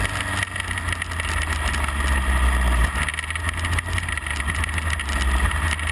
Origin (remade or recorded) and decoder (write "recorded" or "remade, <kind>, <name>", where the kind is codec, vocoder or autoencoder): recorded